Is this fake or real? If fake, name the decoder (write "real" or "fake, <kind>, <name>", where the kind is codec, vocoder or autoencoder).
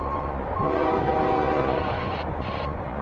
fake, vocoder, Vocos